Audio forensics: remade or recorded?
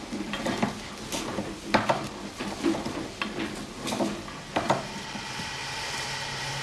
recorded